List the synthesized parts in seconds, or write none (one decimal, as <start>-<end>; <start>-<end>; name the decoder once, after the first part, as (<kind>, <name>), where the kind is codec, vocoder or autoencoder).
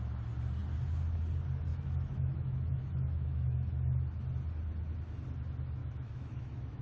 1.7-3.7 (autoencoder, DAC-VAE); 5.8-6.8